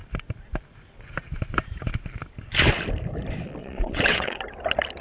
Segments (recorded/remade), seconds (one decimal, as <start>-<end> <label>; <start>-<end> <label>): 0.0-3.6 recorded; 3.6-4.4 remade; 4.4-5.0 recorded